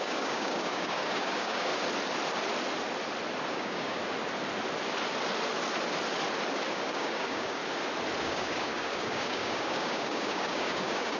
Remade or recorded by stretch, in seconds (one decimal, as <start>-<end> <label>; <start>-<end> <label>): 0.0-1.7 remade; 1.7-3.5 recorded; 3.5-4.0 remade; 4.0-6.7 recorded; 6.7-7.6 remade; 7.6-8.2 recorded; 8.2-11.2 remade